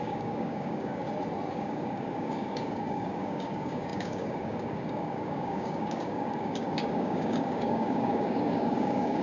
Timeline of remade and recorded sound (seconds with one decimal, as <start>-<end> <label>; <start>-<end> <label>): 0.0-1.0 remade; 1.0-1.5 recorded; 1.5-9.2 remade